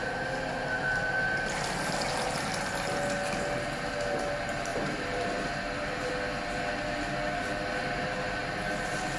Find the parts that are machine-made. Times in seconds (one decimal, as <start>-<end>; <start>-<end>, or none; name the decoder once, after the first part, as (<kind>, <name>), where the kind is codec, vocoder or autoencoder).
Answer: 4.7-6.1 (vocoder, BigVGAN v2)